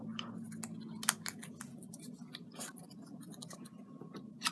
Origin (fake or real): real